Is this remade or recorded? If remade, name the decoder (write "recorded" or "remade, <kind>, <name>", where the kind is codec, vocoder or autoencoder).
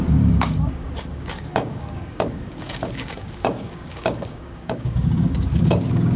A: remade, codec, DAC